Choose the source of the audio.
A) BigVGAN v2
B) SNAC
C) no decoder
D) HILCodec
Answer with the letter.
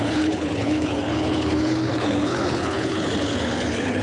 D